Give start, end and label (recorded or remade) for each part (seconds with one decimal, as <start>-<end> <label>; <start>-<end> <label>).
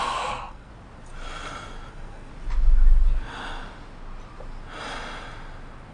0.0-0.7 remade; 0.7-1.9 recorded; 1.9-2.3 remade; 2.3-5.9 recorded